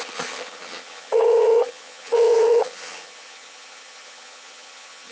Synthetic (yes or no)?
yes